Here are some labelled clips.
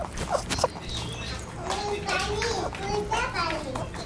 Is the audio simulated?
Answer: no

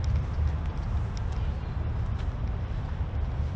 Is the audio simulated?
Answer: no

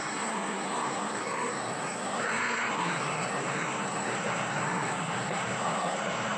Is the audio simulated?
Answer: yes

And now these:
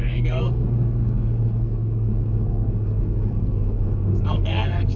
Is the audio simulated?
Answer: yes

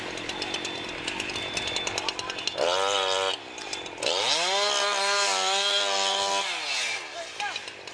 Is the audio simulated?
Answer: no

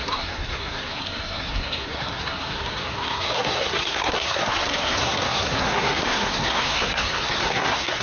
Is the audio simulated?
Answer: yes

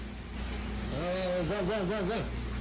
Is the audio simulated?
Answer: no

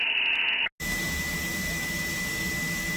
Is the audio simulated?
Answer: no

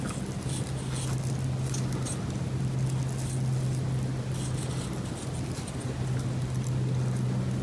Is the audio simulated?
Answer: no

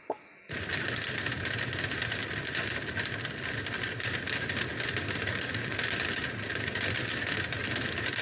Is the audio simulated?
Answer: no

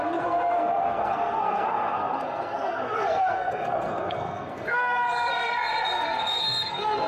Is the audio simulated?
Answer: yes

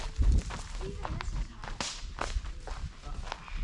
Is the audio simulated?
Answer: no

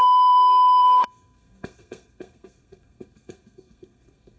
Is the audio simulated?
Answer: yes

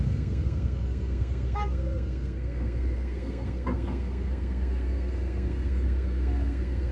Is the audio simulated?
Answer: yes